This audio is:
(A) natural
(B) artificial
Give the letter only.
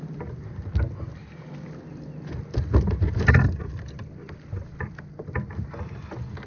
A